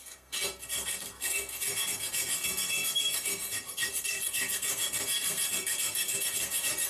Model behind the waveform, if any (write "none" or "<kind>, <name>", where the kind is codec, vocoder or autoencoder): codec, SNAC